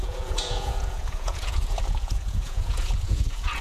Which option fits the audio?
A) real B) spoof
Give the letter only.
B